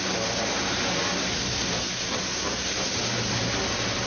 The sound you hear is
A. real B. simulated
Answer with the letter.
A